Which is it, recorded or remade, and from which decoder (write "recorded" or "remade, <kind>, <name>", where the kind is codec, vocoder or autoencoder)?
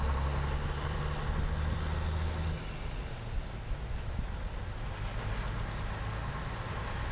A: recorded